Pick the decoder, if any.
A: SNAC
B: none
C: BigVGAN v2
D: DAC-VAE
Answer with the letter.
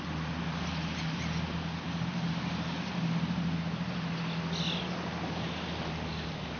B